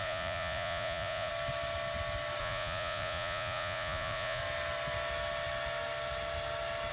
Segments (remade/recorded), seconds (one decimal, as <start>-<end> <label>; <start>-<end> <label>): 0.0-1.3 remade; 1.3-2.4 recorded; 2.4-4.4 remade; 4.4-6.9 recorded